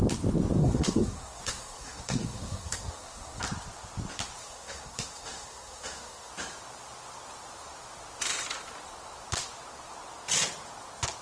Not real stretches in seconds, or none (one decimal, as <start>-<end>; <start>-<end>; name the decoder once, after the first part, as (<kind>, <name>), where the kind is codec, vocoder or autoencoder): 0.6-3.4 (codec, SNAC); 4.4-6.3